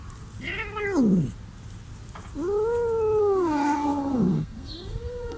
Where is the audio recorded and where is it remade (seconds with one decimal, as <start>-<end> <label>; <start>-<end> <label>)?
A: 0.0-3.2 recorded; 3.2-5.4 remade